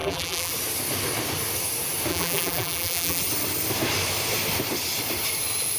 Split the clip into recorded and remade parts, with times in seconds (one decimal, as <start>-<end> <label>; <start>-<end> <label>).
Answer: 0.0-0.5 remade; 0.5-2.1 recorded; 2.1-3.2 remade; 3.2-5.8 recorded